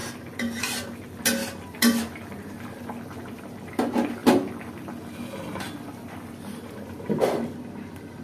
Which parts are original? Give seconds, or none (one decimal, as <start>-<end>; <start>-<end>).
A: 0.0-1.4; 3.4-4.2